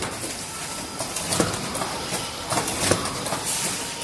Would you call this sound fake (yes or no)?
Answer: no